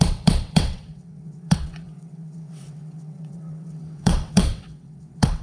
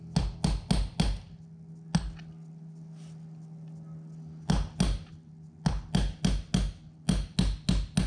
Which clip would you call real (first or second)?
second